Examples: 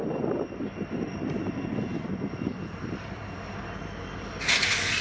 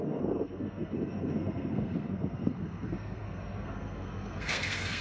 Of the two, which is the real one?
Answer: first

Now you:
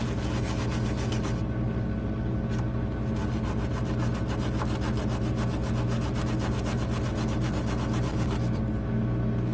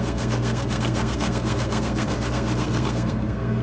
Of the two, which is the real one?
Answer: first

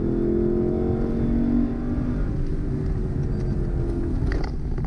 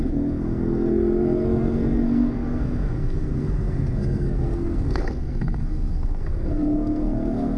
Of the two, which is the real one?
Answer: first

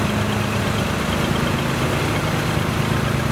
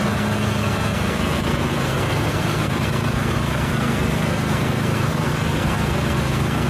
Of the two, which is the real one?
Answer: first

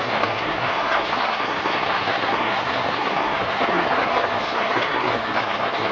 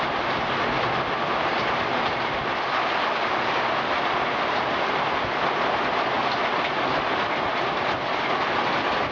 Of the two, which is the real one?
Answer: second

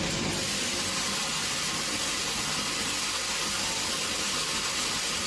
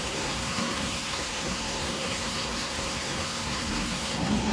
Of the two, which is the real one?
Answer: first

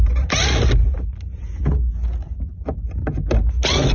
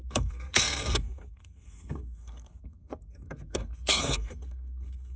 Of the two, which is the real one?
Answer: first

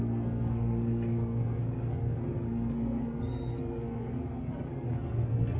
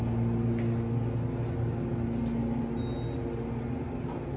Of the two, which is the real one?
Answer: second